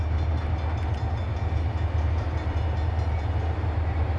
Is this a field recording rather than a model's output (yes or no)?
yes